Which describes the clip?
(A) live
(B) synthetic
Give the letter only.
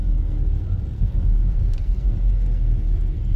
B